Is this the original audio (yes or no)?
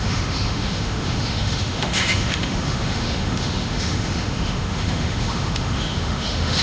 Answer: no